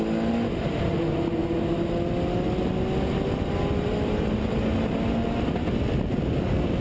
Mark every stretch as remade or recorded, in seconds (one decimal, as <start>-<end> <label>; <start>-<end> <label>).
0.0-6.8 recorded